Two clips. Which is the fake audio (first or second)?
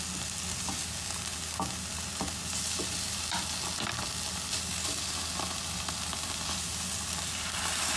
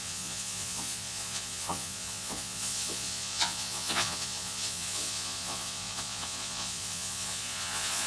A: second